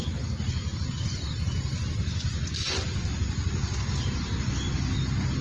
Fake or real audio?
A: real